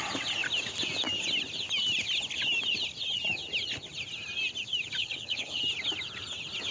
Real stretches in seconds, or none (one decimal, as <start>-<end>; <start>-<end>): 0.0-5.0; 5.6-6.7